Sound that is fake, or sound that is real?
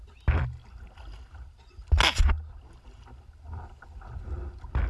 real